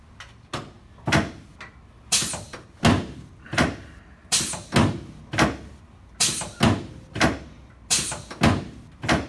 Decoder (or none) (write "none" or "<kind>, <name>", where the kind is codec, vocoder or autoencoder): none